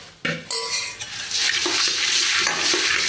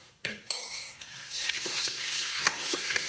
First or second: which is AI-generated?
second